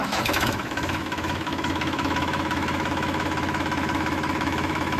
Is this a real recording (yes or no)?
no